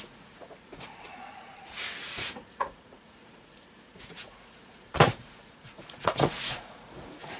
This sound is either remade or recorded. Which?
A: remade